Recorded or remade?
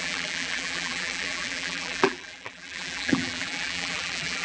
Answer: remade